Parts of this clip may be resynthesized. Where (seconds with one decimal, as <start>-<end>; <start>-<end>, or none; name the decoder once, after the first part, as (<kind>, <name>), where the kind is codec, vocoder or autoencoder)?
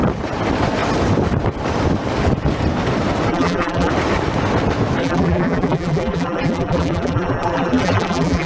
3.3-3.9 (vocoder, BigVGAN v2); 5.0-8.5